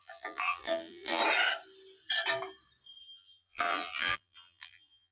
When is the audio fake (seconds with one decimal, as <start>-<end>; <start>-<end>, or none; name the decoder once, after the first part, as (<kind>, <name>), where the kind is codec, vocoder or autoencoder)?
0.0-1.2 (vocoder, BigVGAN v2); 3.0-5.1